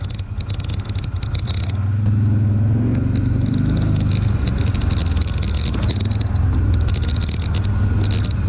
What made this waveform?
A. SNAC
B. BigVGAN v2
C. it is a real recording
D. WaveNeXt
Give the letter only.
C